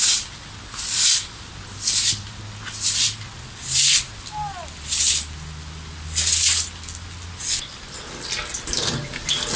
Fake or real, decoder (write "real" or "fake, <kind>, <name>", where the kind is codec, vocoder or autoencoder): real